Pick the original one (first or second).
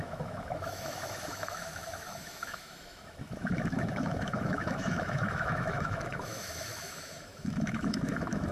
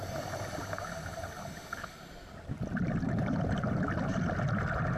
second